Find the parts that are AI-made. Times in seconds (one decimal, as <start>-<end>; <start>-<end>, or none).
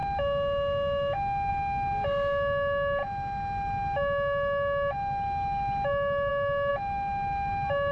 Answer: none